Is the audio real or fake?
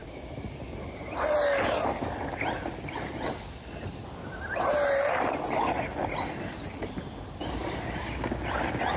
real